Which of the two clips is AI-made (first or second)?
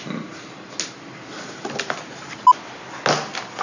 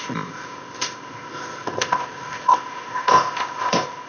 second